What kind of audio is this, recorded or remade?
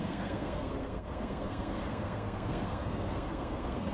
remade